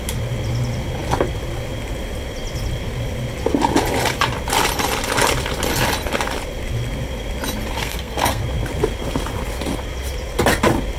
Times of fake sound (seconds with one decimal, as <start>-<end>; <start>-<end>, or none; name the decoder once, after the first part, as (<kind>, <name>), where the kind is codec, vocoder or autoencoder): 7.8-8.4 (codec, SNAC)